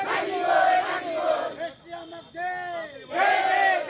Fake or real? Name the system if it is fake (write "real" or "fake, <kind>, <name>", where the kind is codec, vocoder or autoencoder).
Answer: real